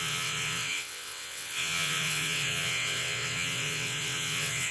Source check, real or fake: fake